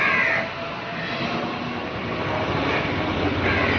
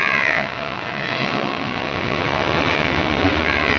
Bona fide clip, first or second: first